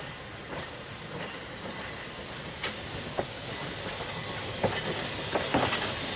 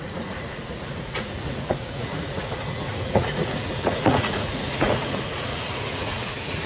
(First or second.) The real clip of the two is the first